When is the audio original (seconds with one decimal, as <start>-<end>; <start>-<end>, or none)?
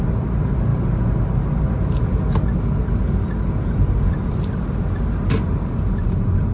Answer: 0.0-6.5